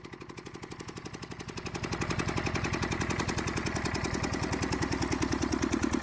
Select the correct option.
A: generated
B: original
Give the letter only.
B